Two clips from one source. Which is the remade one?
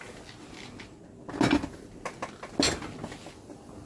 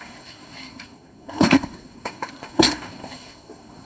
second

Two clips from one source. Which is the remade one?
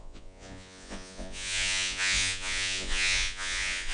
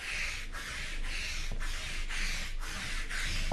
first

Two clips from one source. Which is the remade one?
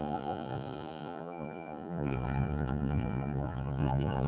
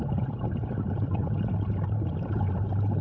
first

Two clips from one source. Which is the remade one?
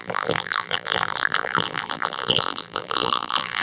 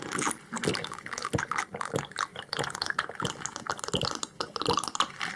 first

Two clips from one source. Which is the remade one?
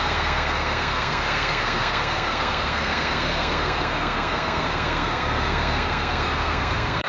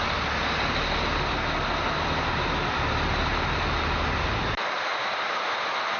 first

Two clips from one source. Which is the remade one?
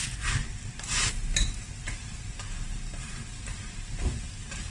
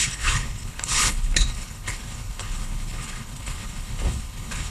second